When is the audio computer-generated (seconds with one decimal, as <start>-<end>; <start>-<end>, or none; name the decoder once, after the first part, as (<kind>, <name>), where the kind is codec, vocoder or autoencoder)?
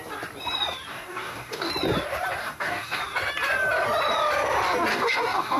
0.9-1.7 (codec, DAC); 2.4-3.0; 4.9-5.6